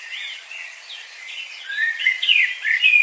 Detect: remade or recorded remade